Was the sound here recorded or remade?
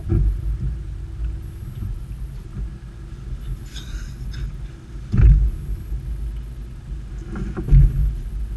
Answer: recorded